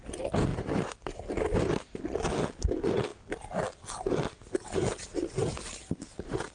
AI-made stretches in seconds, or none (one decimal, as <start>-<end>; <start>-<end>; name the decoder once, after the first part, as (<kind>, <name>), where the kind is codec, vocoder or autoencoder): 0.5-2.0 (vocoder, BigVGAN v2)